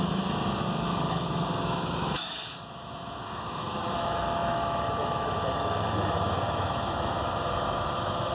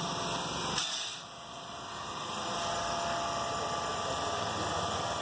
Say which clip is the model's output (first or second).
first